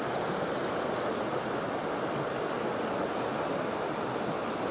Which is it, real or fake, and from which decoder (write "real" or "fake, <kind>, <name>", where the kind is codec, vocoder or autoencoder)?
real